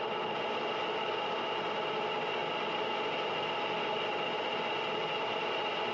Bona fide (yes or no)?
yes